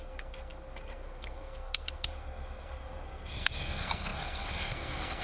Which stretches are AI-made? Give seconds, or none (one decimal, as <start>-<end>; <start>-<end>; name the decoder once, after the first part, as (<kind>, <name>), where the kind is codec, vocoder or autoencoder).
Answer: 0.0-5.2 (codec, SNAC)